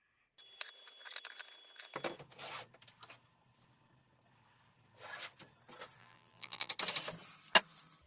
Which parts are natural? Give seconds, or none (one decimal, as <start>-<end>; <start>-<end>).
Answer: 0.0-6.0; 6.7-8.1